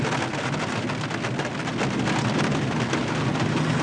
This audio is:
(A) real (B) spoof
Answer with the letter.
A